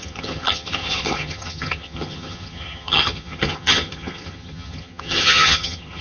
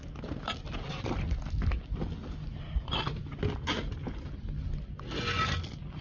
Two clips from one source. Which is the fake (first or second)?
first